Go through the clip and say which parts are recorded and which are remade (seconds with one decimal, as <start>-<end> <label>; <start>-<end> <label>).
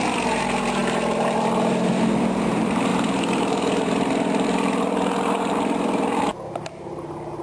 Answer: 0.0-6.3 remade; 6.3-7.4 recorded